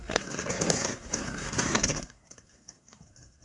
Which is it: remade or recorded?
remade